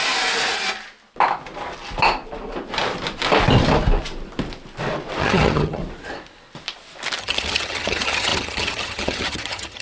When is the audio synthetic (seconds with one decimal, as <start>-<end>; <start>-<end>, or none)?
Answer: 5.2-5.8; 7.2-9.8